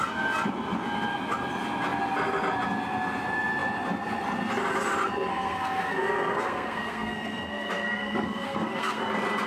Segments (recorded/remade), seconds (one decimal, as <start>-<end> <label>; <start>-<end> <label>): 0.0-5.3 recorded; 5.3-9.0 remade; 9.0-9.5 recorded